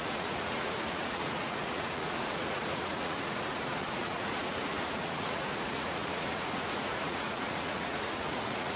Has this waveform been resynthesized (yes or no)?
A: yes